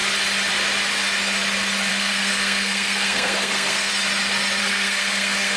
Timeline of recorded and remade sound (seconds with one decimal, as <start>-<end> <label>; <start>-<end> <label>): 0.0-1.9 recorded; 1.9-3.9 remade; 3.9-4.6 recorded; 4.6-5.6 remade